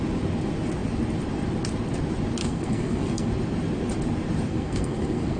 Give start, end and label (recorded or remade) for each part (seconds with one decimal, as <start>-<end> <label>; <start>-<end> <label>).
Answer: 0.0-2.4 recorded; 2.4-3.3 remade; 3.3-4.5 recorded; 4.5-5.4 remade